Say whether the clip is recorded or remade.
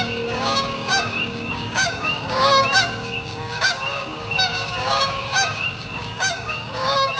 remade